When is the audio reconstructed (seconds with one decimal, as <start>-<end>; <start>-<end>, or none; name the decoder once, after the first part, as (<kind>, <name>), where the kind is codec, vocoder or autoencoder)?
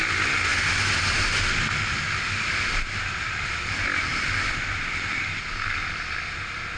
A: none